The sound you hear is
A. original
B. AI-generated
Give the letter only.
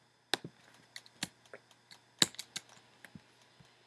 A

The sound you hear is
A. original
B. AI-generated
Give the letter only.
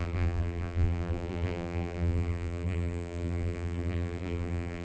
B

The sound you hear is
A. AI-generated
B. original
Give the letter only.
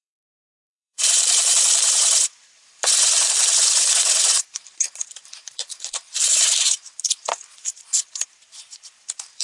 A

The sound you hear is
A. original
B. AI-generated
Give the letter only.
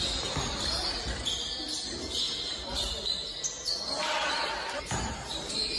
A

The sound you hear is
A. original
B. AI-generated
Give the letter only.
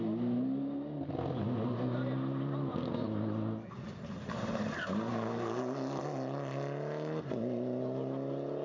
A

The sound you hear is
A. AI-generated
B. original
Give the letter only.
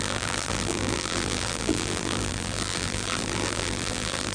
A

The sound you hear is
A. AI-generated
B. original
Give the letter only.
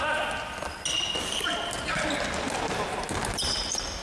B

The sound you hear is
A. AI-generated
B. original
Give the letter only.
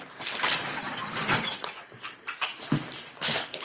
A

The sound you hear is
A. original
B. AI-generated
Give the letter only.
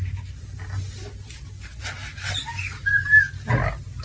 A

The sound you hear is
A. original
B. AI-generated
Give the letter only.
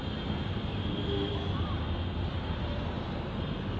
A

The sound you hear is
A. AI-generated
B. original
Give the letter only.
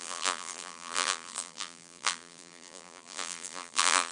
A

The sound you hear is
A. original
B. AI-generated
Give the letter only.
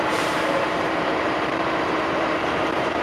B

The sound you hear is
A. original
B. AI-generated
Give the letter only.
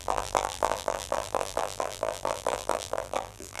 B